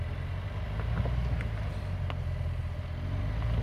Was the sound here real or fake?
real